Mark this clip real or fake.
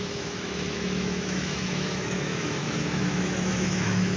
fake